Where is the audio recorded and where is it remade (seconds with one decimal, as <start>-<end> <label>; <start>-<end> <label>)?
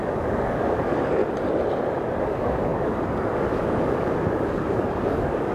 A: 0.0-1.2 remade; 1.2-2.2 recorded; 2.2-5.5 remade